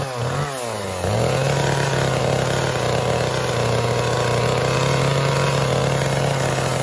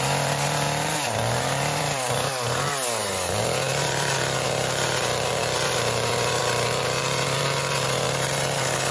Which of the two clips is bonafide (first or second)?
first